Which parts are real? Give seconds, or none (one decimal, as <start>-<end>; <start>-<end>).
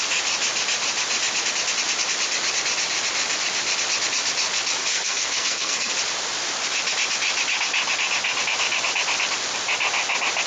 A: 0.0-4.8; 5.9-10.5